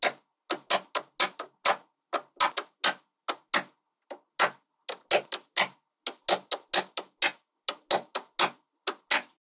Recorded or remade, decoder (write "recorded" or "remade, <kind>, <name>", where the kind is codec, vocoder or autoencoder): recorded